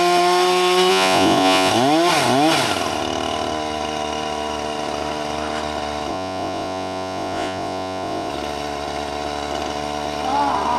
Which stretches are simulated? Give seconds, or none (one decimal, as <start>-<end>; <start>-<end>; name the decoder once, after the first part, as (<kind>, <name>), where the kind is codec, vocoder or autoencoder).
0.9-1.7 (vocoder, Vocos); 6.1-8.3